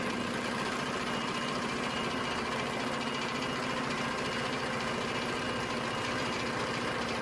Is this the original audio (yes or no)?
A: yes